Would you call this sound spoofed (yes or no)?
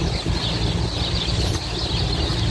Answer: no